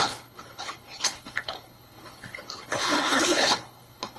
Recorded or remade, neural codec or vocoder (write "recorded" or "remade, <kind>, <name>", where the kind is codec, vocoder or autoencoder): remade, codec, HILCodec